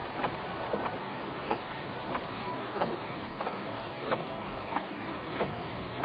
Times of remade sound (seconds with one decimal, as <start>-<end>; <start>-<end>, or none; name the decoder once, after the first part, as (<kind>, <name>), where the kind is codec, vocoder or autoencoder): 1.0-1.9 (codec, DAC); 2.3-6.0